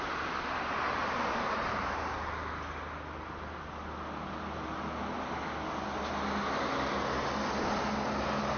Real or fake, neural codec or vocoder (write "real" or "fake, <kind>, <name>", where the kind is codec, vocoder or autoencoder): real